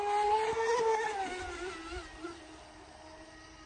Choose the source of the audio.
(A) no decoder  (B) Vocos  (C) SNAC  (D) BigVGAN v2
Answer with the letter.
A